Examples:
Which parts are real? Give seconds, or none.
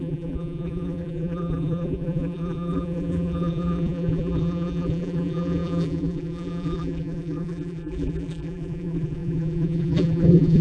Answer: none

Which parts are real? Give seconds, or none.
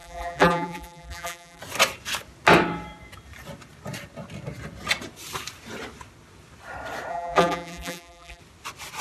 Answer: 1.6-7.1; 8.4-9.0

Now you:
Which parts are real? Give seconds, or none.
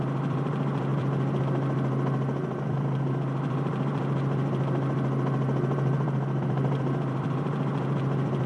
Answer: none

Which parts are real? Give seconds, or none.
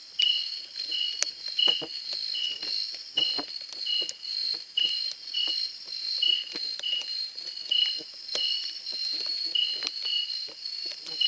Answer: 0.0-3.2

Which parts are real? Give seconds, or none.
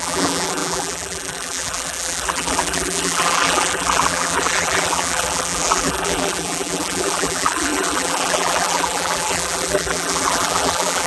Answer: none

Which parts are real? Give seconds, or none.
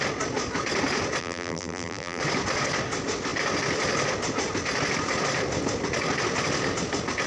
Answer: 0.0-1.2; 2.2-7.3